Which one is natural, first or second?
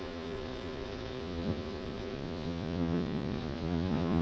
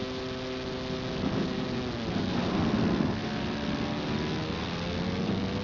second